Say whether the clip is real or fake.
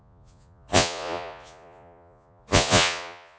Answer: fake